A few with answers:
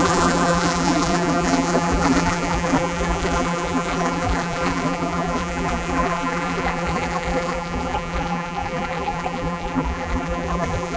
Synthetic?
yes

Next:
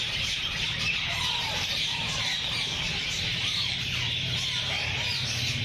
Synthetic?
yes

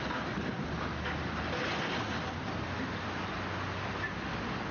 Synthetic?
no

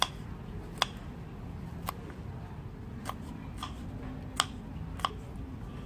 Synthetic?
no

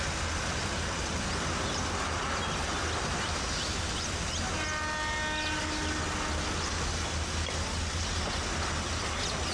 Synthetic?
no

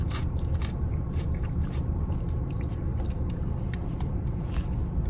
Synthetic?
yes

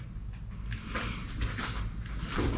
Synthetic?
no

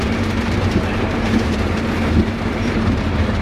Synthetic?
yes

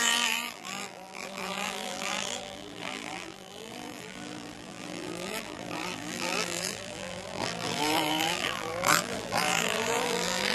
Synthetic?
yes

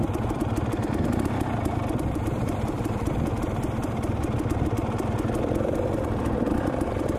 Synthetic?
yes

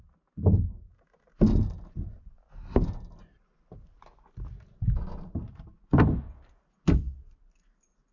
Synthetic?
no